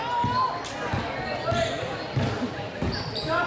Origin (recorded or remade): recorded